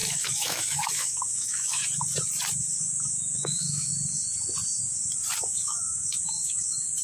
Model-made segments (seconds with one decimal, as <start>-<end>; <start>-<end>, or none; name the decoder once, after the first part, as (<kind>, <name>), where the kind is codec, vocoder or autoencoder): 0.0-1.8 (autoencoder, DAC-VAE); 3.4-3.9; 5.5-7.0